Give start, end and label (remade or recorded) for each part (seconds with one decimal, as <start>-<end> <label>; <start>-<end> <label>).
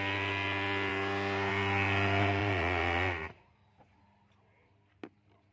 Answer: 0.0-2.4 recorded; 2.4-4.0 remade; 4.0-5.5 recorded